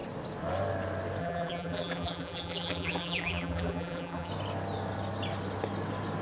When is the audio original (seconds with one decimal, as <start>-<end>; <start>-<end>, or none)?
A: 0.0-1.2; 4.3-6.2